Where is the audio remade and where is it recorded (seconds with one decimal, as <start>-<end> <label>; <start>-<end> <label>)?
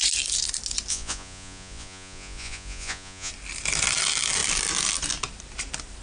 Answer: 0.0-0.9 recorded; 0.9-3.3 remade; 3.3-6.0 recorded